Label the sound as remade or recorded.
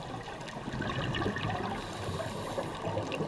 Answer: recorded